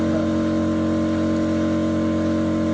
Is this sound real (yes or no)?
yes